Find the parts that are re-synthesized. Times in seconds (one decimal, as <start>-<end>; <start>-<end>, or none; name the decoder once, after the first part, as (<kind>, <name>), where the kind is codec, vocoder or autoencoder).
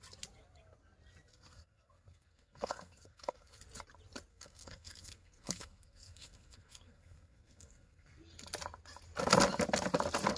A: 1.3-3.6 (codec, SNAC); 4.3-8.2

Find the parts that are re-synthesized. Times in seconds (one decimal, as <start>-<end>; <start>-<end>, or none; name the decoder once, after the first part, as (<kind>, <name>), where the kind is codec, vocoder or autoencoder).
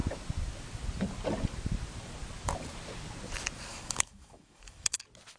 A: 3.7-5.0 (autoencoder, DAC-VAE)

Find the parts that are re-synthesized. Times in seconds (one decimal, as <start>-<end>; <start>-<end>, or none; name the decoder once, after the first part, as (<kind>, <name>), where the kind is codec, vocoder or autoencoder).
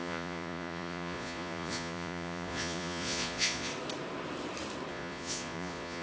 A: 0.0-3.7 (vocoder, Vocos); 4.9-6.0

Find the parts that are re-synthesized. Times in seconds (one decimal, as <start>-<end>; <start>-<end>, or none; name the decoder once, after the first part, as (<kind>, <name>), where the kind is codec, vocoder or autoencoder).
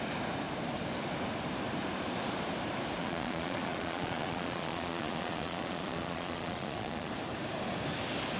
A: 3.0-7.1 (vocoder, Vocos)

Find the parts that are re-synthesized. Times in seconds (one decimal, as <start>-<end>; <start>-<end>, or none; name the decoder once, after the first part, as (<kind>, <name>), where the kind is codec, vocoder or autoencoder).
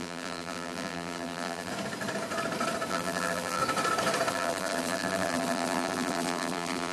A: 0.0-1.7 (vocoder, BigVGAN v2); 2.9-3.6; 4.3-6.9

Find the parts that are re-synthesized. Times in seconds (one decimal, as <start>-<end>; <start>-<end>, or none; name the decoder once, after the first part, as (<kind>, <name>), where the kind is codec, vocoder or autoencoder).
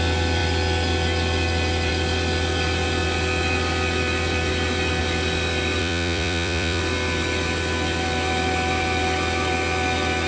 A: 5.8-6.8 (vocoder, Vocos)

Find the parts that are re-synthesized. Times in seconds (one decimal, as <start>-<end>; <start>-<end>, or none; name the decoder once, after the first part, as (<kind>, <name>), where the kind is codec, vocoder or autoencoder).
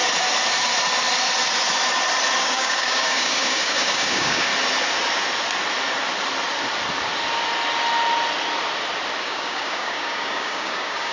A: 2.4-4.5 (codec, DAC); 9.2-11.1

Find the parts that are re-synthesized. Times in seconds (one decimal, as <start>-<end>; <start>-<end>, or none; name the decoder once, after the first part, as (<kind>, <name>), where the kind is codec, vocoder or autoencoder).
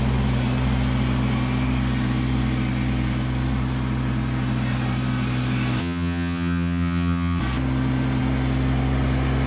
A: 5.8-7.4 (vocoder, HiFi-GAN)